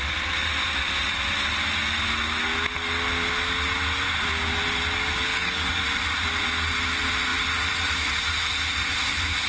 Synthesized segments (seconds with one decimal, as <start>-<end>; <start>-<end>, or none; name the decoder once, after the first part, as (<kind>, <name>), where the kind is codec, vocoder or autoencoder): 5.3-5.8 (codec, DAC)